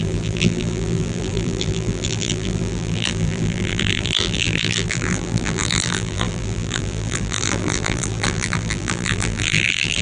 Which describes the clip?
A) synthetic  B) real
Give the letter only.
A